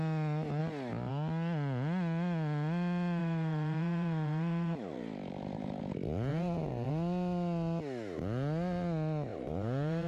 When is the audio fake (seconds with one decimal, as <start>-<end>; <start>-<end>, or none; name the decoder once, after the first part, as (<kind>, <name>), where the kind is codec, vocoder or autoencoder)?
3.2-5.8 (vocoder, BigVGAN v2); 6.3-6.9; 9.3-10.1